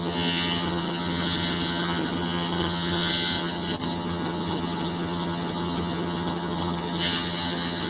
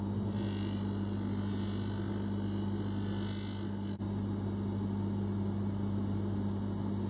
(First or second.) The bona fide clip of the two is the second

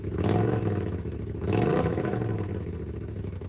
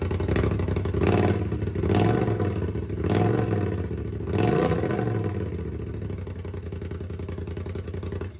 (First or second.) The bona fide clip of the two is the second